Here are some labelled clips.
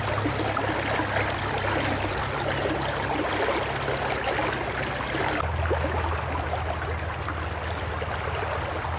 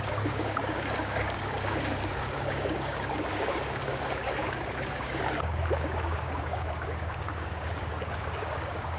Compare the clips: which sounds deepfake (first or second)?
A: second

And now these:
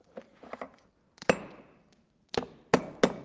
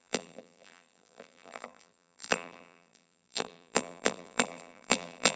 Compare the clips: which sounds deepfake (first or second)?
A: second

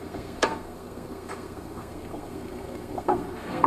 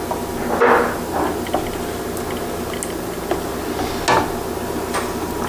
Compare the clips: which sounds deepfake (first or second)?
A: first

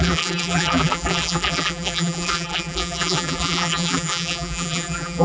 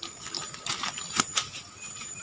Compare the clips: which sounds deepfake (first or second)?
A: first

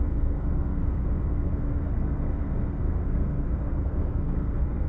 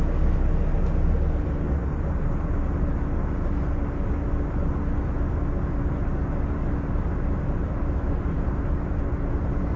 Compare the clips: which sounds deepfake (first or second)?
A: first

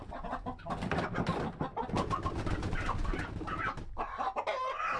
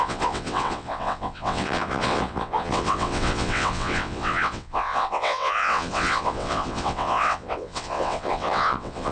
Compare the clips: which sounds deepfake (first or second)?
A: second